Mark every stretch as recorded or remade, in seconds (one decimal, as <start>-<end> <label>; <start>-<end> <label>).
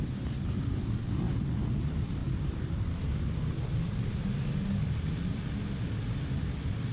0.0-2.2 recorded; 2.2-2.7 remade; 2.7-6.9 recorded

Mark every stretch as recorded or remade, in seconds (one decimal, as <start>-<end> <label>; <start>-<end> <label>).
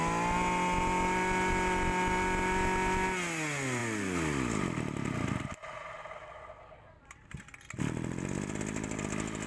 0.0-9.5 recorded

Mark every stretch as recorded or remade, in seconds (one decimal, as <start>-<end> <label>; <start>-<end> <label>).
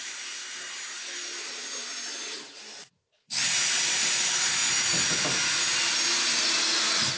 0.0-0.4 remade; 0.4-2.6 recorded; 2.6-4.6 remade; 4.6-5.8 recorded; 5.8-7.2 remade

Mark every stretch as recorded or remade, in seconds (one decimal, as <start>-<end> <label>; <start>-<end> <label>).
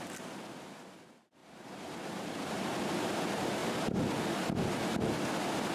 0.0-1.4 recorded; 1.4-3.2 remade; 3.2-5.7 recorded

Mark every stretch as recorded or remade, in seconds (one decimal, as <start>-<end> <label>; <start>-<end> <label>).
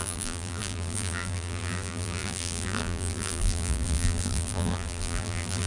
0.0-5.7 remade